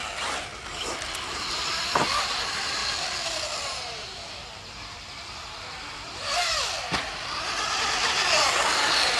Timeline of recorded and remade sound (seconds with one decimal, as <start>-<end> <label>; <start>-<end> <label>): 0.0-9.2 recorded